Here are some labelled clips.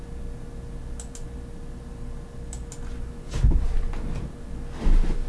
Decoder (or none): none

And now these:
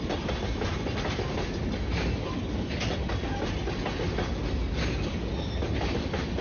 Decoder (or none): none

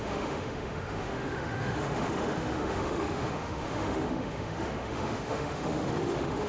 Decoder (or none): autoencoder, DAC-VAE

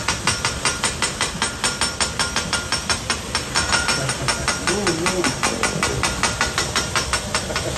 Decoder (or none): none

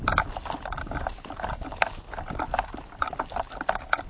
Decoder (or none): none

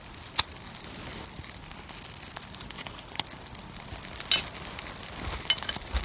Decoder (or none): none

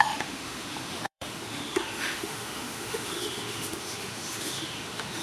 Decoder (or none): autoencoder, DAC-VAE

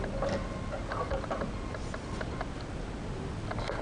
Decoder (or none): none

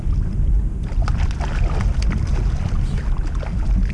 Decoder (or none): none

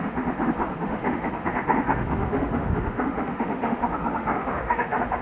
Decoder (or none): autoencoder, DAC-VAE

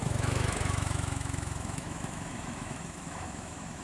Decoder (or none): autoencoder, DAC-VAE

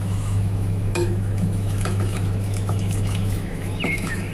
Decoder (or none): autoencoder, DAC-VAE